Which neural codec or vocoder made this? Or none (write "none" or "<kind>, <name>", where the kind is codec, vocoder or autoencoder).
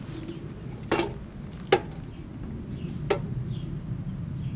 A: none